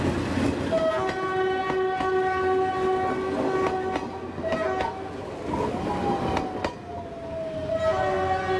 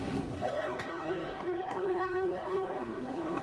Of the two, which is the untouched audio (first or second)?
first